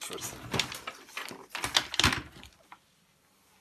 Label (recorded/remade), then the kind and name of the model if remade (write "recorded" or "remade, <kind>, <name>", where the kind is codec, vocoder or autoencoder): recorded